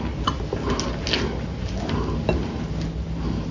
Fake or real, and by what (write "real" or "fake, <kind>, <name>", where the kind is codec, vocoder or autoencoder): real